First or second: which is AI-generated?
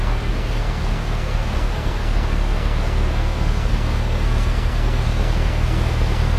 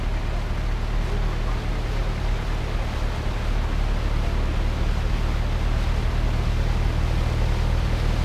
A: first